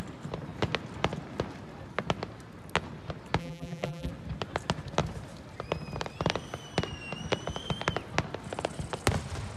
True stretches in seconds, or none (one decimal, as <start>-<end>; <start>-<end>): 0.0-3.4; 4.1-9.6